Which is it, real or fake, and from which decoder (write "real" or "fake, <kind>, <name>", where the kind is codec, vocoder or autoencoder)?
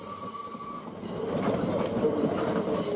real